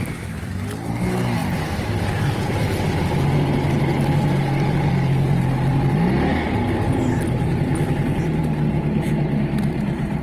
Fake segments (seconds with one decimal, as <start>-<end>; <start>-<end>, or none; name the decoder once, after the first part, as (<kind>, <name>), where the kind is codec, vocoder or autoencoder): none